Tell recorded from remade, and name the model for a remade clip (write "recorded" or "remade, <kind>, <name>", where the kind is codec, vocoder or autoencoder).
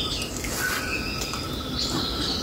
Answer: recorded